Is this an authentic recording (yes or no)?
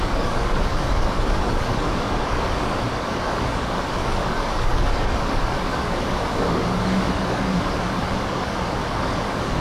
no